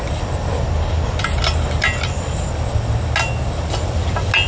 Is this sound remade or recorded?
recorded